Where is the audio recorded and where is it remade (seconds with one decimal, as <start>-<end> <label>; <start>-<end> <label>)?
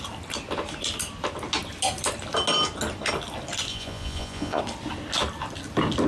0.0-3.7 recorded; 3.7-4.6 remade; 4.6-6.1 recorded